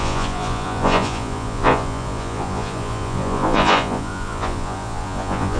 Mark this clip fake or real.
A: fake